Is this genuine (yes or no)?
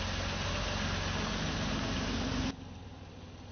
yes